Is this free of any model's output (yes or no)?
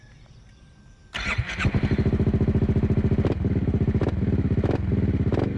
yes